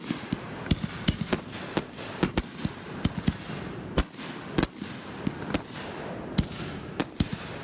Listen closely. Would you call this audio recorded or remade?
recorded